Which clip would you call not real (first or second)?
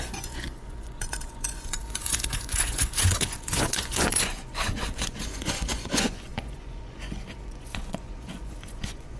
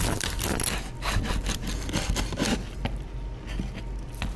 first